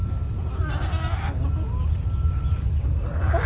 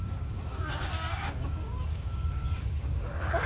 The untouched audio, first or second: first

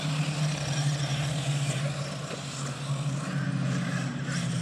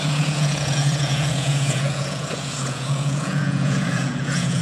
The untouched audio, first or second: first